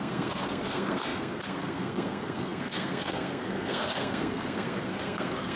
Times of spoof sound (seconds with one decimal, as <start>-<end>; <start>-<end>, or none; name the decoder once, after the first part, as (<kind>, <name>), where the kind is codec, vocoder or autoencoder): 0.0-5.6 (codec, SNAC)